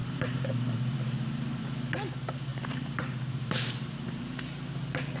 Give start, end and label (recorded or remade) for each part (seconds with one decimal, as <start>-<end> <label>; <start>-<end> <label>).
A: 0.0-1.6 remade; 1.6-2.5 recorded; 2.5-4.2 remade; 4.2-5.2 recorded